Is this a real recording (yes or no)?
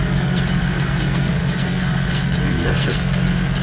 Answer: no